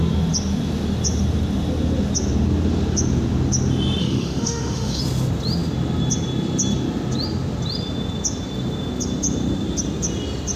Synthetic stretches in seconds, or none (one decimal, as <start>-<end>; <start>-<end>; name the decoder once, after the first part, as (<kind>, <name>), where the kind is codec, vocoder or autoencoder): 4.0-5.0 (autoencoder, DAC-VAE)